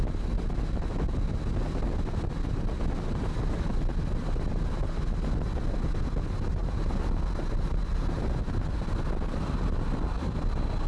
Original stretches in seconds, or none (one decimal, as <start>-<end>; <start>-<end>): 0.0-10.9